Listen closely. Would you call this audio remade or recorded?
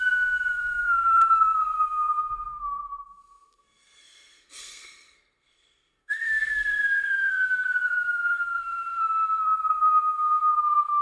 remade